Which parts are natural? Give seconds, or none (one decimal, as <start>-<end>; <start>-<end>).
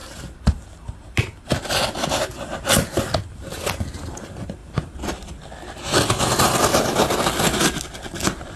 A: 0.0-8.6